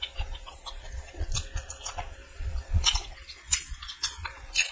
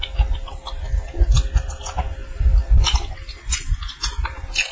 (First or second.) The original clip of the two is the second